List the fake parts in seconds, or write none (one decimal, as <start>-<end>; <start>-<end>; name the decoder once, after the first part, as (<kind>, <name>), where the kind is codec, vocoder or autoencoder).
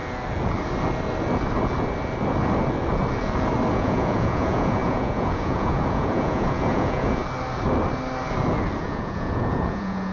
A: 3.7-7.2 (vocoder, Vocos); 8.8-10.1